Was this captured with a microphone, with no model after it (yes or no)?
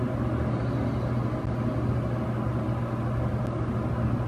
yes